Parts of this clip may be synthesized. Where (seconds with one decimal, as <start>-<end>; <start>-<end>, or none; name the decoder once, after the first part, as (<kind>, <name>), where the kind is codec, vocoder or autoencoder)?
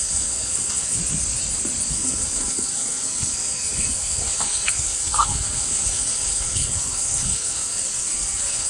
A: 0.0-1.0 (codec, SNAC); 1.9-8.7